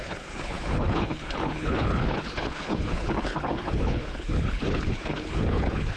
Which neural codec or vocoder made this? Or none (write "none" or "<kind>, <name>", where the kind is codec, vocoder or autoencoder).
codec, HILCodec